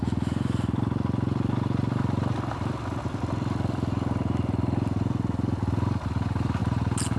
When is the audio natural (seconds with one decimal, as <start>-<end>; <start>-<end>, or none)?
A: 0.0-7.2